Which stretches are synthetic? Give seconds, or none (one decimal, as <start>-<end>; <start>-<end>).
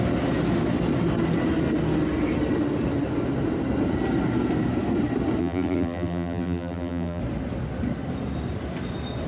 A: 5.4-7.2